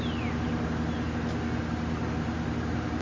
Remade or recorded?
recorded